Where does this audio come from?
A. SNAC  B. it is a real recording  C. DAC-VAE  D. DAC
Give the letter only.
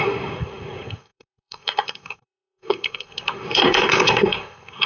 A